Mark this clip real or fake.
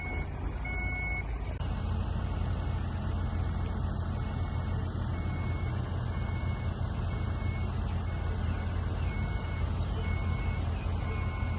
real